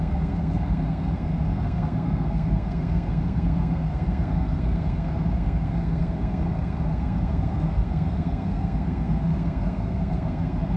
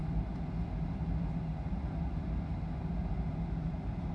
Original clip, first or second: second